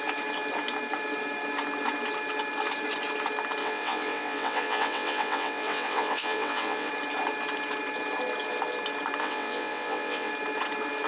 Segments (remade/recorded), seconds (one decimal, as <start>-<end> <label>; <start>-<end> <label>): 0.0-3.6 recorded; 3.6-6.9 remade; 6.9-9.2 recorded; 9.2-10.3 remade; 10.3-11.1 recorded